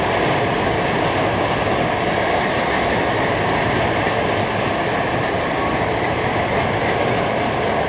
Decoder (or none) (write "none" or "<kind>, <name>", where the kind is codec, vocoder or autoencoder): none